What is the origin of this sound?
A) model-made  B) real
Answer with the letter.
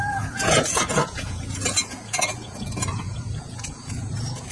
A